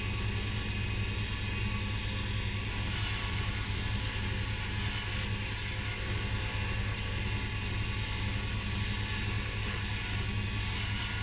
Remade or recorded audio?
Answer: recorded